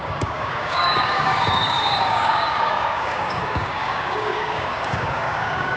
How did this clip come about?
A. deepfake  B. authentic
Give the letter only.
A